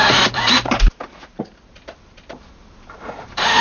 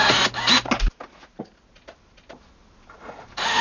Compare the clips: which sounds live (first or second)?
second